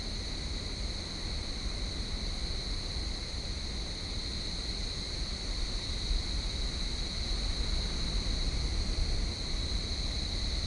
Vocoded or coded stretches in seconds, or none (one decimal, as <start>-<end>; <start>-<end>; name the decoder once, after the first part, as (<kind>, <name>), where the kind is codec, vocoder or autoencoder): none